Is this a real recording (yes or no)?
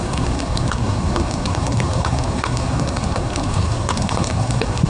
no